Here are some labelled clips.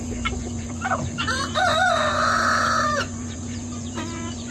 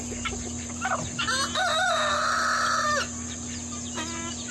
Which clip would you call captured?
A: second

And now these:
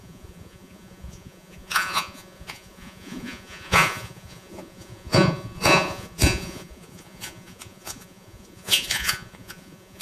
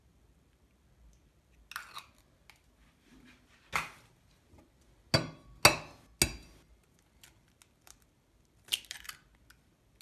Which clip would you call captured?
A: second